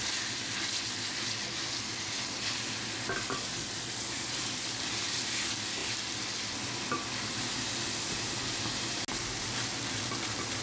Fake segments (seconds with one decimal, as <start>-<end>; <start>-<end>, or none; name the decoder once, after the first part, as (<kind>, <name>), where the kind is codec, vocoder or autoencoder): none